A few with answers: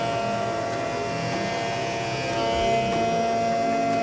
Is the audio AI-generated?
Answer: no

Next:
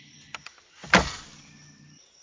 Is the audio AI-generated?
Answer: no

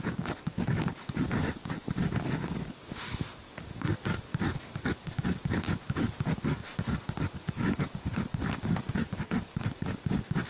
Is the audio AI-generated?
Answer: yes